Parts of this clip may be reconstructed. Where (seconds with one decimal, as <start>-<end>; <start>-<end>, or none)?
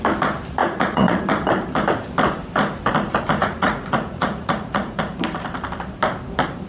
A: 0.6-1.2; 3.4-5.0